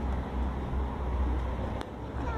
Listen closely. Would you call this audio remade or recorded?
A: recorded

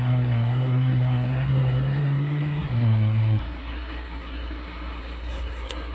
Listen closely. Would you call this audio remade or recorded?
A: remade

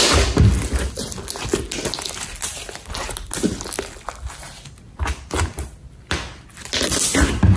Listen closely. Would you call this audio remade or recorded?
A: recorded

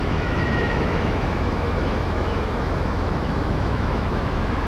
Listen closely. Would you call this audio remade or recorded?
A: remade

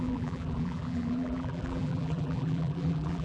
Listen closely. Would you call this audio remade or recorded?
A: remade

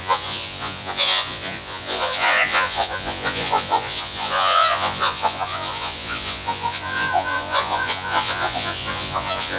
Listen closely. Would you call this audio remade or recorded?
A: remade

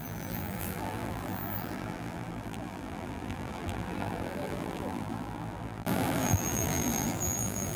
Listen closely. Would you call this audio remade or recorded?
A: remade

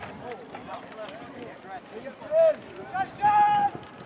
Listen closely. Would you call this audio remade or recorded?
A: recorded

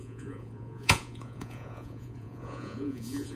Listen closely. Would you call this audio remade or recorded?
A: remade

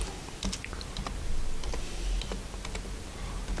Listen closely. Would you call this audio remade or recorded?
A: recorded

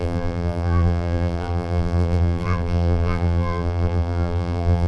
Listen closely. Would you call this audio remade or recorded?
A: remade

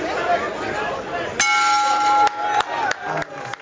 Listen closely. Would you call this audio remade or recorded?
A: recorded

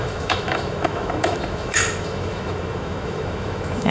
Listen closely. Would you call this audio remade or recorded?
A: remade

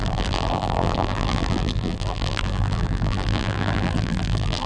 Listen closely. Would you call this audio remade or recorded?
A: remade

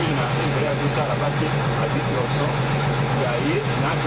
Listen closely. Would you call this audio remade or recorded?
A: remade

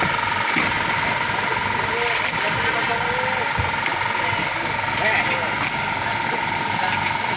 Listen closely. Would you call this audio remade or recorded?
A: recorded